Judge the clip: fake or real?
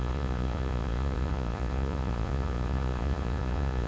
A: fake